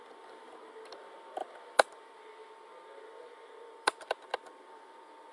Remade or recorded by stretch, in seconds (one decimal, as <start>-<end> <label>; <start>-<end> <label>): 0.0-5.3 recorded